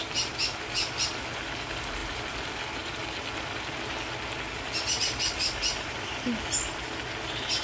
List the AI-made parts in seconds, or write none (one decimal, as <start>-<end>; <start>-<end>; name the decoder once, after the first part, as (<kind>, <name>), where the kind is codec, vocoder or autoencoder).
none